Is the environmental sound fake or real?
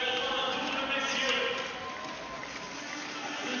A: real